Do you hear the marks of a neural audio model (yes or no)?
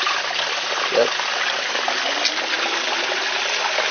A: no